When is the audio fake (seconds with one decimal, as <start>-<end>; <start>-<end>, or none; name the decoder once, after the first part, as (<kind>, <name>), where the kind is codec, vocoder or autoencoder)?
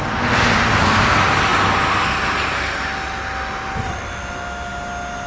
none